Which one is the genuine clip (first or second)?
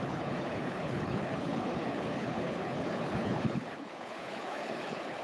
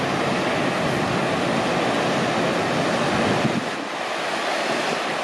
second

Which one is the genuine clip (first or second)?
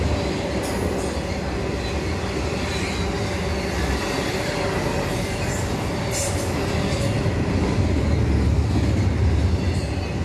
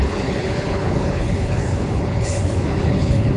first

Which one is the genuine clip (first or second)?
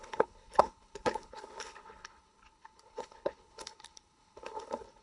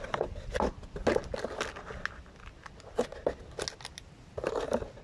second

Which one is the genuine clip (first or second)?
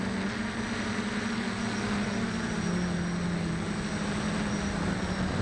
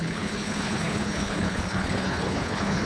first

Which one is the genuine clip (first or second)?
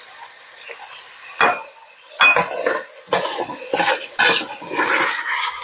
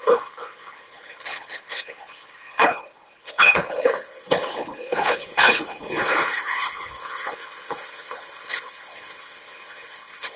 first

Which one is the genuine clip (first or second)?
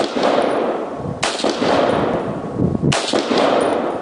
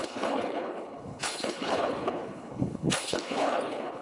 first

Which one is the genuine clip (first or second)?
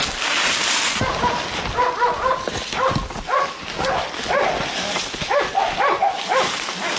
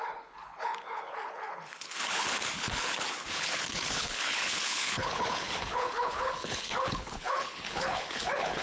first